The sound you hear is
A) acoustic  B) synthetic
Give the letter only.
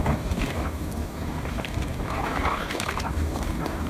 B